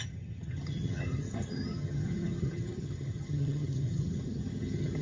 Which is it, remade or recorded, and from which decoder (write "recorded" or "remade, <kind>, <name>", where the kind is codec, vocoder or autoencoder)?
remade, vocoder, HiFi-GAN